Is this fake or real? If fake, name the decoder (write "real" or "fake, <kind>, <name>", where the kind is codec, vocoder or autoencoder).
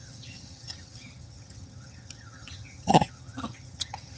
fake, vocoder, HiFi-GAN